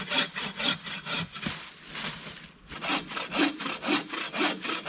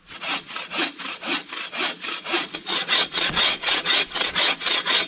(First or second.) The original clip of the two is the first